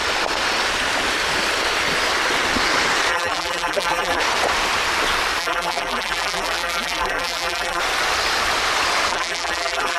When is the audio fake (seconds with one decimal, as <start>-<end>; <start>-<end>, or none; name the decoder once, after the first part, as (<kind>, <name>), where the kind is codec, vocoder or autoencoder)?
3.1-4.2 (vocoder, BigVGAN v2); 5.4-7.8; 9.1-10.0